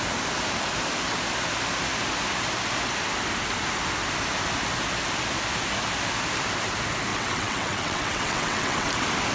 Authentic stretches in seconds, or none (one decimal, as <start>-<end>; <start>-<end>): 0.0-7.1; 8.9-9.3